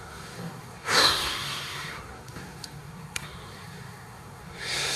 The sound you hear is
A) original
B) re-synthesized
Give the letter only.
B